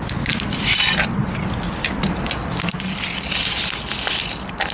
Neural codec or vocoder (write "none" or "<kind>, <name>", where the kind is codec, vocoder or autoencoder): none